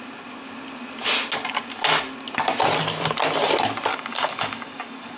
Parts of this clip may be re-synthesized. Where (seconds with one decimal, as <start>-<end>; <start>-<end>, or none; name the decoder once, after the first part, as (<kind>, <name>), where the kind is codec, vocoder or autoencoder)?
3.9-5.2 (codec, DAC)